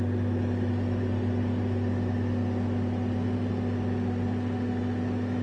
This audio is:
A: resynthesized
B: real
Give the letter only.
B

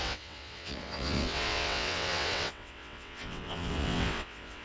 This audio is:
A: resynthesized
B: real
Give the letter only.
A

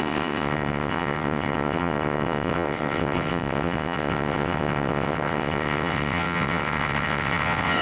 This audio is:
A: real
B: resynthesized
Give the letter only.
B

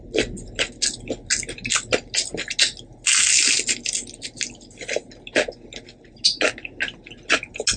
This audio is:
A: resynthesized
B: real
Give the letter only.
B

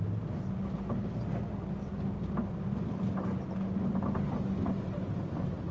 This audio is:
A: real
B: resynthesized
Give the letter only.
A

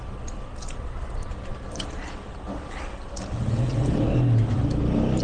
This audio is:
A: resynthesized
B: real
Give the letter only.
B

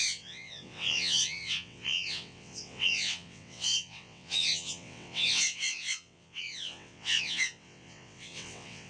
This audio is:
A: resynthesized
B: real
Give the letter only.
A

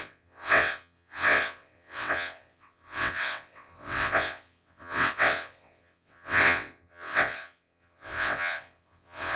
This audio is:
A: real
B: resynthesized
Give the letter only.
B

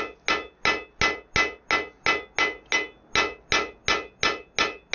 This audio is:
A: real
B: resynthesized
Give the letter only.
A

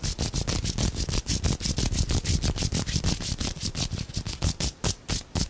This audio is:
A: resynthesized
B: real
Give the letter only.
B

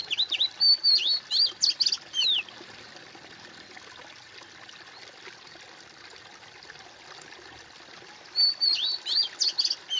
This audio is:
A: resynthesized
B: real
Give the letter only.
B